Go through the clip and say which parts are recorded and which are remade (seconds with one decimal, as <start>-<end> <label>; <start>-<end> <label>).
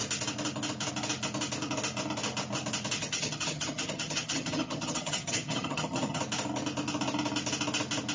0.0-3.0 recorded; 3.0-6.2 remade; 6.2-8.1 recorded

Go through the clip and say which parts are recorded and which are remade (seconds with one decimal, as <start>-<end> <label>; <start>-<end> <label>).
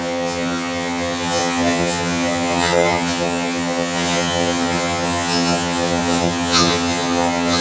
0.0-7.6 remade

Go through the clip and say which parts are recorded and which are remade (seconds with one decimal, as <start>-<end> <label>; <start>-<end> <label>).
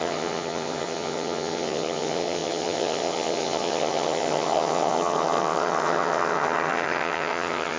0.0-7.8 remade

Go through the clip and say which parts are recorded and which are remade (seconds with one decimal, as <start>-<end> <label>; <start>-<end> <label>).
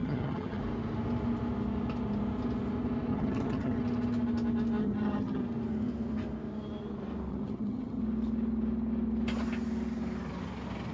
0.0-0.6 remade; 0.6-3.1 recorded; 3.1-3.8 remade; 3.8-4.8 recorded; 4.8-5.4 remade; 5.4-7.3 recorded; 7.3-8.0 remade; 8.0-10.9 recorded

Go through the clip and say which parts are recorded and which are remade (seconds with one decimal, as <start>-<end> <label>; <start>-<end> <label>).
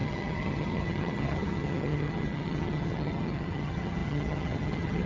0.0-5.1 remade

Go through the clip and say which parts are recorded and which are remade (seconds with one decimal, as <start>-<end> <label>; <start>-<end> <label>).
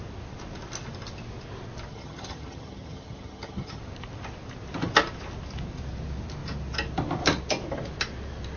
0.0-1.9 recorded; 1.9-3.8 remade; 3.8-8.6 recorded